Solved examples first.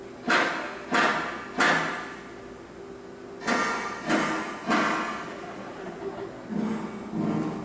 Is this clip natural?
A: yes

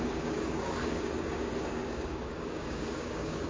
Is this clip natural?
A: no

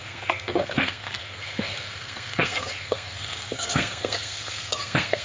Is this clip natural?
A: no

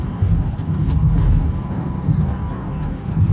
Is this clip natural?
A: no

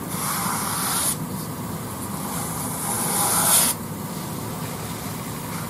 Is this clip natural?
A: yes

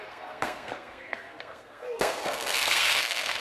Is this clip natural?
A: no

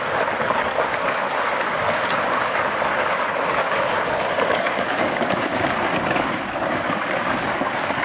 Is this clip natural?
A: no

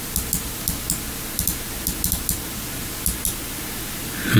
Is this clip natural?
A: yes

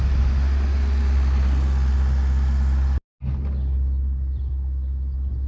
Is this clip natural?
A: yes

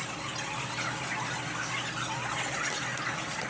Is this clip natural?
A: yes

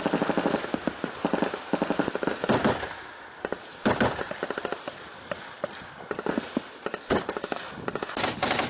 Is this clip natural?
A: yes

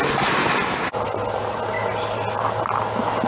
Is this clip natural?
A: yes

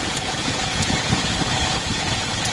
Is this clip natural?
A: no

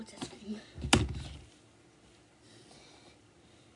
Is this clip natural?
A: yes